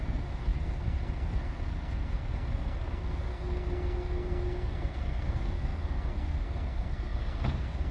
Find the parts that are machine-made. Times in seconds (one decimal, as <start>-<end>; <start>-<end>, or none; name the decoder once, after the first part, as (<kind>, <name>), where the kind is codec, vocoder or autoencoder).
0.0-7.9 (codec, SNAC)